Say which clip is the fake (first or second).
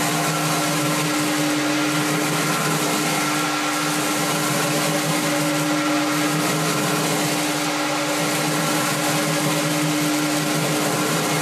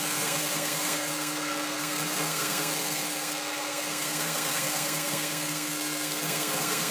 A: second